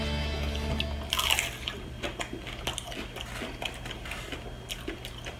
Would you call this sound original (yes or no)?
yes